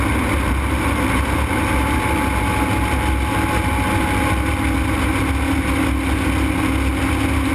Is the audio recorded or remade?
recorded